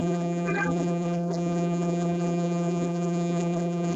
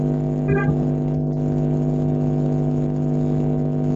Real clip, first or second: second